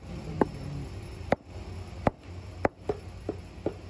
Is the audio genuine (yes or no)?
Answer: yes